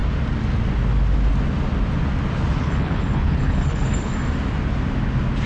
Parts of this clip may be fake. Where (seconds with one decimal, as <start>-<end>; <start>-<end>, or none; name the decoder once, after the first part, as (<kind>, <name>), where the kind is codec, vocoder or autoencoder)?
2.6-4.1 (codec, HILCodec)